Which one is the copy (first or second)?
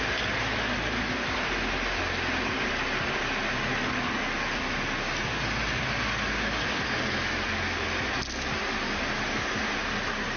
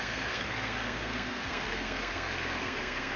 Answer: second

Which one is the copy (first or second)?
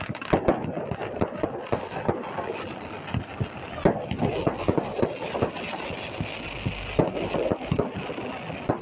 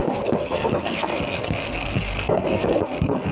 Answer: second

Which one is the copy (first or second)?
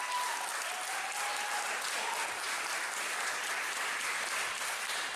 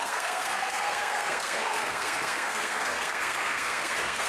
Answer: second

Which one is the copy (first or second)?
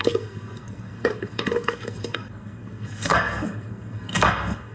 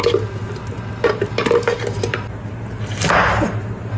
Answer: first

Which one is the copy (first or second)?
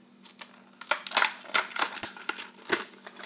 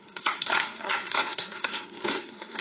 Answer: second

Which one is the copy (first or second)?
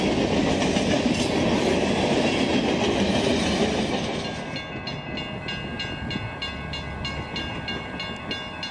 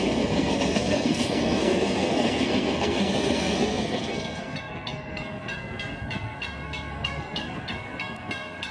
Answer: second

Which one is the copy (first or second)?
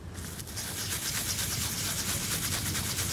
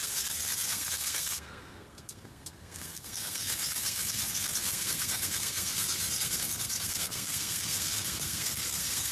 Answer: second